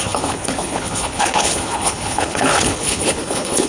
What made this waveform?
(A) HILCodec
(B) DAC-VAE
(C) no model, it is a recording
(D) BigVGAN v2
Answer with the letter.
A